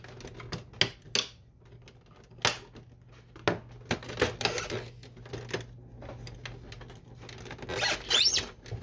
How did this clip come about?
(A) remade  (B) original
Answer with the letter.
B